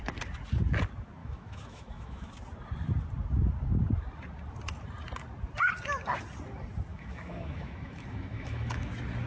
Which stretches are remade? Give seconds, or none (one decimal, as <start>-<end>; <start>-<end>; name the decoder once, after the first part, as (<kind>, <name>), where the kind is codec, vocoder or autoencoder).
1.2-2.3 (autoencoder, DAC-VAE); 6.9-8.9